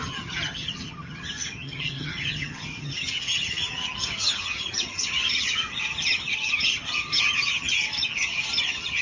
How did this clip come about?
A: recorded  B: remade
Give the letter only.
B